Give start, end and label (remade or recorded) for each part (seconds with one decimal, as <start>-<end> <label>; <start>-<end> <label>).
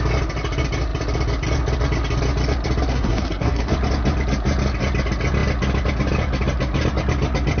0.0-2.9 recorded; 2.9-3.7 remade; 3.7-7.6 recorded